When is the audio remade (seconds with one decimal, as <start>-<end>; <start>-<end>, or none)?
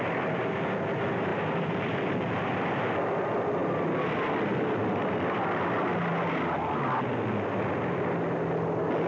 none